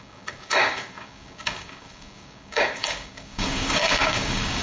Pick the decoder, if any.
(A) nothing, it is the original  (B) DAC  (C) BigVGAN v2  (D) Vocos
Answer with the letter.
B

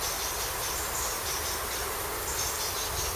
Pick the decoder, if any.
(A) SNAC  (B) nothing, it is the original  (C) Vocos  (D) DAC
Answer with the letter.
B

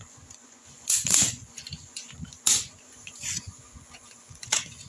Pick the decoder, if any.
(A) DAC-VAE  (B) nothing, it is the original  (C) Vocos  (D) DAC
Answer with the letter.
C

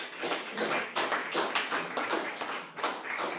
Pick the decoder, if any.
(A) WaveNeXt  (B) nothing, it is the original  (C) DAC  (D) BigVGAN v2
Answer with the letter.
C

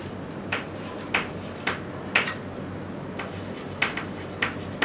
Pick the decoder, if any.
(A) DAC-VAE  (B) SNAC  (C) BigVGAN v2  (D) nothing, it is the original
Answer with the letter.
D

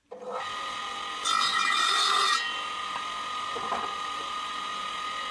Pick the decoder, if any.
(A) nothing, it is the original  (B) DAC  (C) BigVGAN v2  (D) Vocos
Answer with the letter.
A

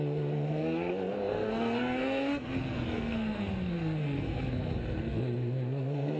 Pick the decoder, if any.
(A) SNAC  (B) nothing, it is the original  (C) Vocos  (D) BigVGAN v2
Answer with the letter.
A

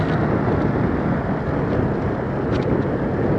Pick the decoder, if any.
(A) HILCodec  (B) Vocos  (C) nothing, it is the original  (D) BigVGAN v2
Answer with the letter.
C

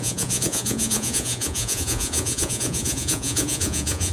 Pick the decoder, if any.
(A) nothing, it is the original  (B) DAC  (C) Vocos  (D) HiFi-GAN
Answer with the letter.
C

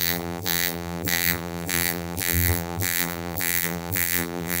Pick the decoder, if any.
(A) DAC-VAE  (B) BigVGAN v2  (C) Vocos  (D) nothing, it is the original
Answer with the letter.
B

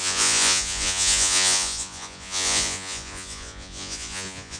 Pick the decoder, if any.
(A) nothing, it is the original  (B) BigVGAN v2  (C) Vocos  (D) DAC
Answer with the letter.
C